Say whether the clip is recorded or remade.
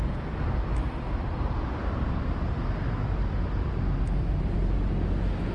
recorded